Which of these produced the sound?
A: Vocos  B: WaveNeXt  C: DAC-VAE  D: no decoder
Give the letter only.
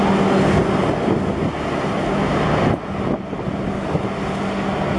D